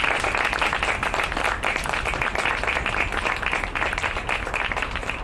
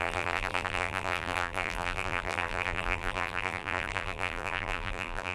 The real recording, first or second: first